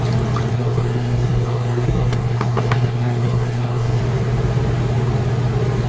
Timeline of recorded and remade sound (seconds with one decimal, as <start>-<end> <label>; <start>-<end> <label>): 0.0-0.5 recorded; 0.5-4.0 remade; 4.0-5.9 recorded